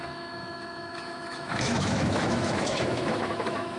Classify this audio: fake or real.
fake